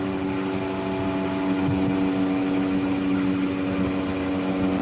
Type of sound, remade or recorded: recorded